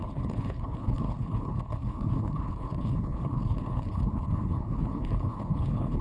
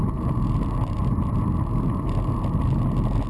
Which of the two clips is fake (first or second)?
first